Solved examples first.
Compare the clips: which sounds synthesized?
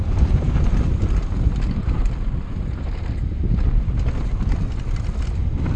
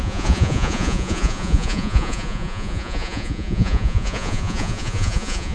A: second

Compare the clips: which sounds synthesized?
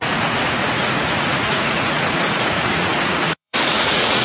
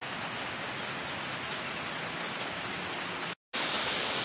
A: first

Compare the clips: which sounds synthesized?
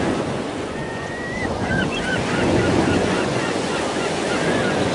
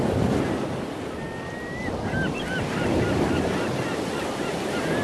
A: first